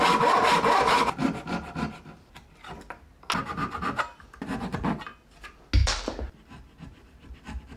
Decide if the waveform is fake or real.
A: real